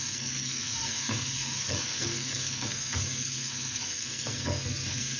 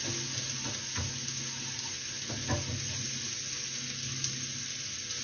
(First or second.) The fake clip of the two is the first